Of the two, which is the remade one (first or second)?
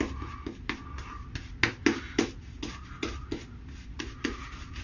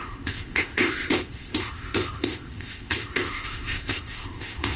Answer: second